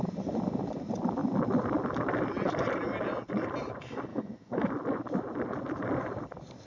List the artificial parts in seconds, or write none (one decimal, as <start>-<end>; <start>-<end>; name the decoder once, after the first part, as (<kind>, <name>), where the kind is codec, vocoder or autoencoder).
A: 4.1-4.7 (autoencoder, DAC-VAE)